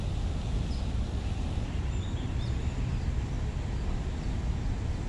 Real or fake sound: real